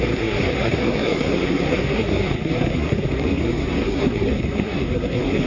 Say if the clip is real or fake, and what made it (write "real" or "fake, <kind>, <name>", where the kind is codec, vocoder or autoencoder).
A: fake, codec, SNAC